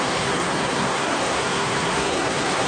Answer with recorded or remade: remade